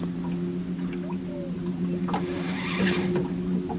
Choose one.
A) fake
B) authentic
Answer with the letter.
B